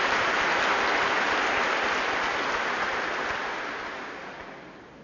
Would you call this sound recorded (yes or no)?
yes